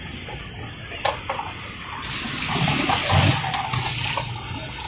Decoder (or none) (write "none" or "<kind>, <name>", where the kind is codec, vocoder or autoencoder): none